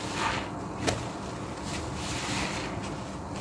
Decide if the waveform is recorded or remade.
recorded